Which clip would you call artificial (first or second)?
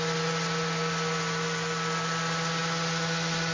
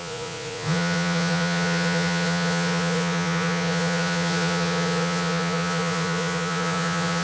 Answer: second